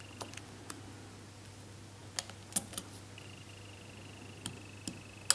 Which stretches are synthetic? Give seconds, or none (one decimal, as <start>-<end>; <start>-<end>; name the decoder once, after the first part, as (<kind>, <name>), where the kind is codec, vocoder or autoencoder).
none